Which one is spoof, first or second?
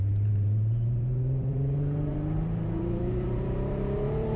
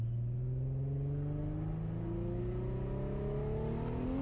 first